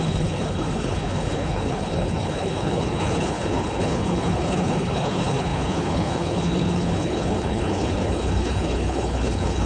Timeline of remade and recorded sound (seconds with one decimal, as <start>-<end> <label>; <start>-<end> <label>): 0.0-9.7 remade